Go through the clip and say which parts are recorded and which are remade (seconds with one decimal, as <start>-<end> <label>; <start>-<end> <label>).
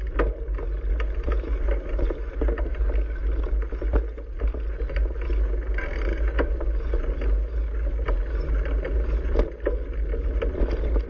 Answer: 0.0-11.1 recorded